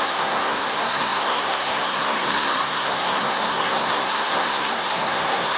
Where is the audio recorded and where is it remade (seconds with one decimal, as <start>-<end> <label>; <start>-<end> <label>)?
0.0-5.6 remade